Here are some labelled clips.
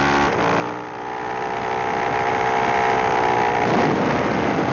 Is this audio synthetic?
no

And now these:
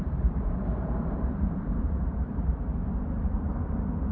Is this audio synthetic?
yes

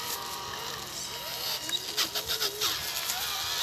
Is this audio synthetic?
no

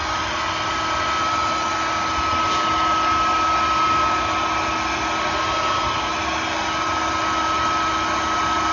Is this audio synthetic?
no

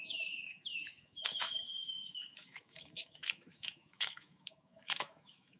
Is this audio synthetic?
yes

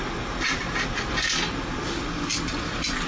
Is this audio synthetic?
no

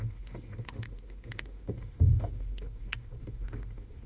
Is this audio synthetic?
yes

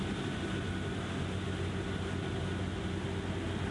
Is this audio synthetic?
no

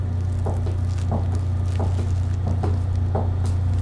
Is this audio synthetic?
no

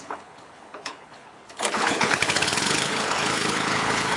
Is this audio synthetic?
yes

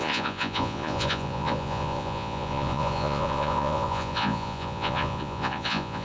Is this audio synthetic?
yes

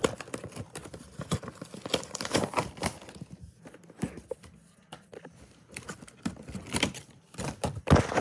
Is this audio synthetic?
no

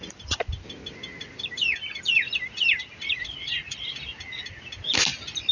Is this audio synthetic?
no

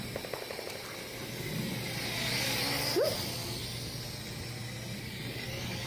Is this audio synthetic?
no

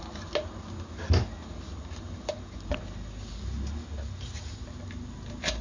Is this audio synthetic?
no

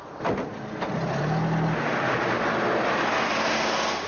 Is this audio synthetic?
no